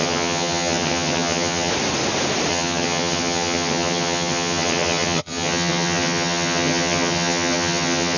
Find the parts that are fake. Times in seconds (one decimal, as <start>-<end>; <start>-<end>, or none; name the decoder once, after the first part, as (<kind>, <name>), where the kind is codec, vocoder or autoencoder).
0.0-1.7 (vocoder, HiFi-GAN); 2.5-8.2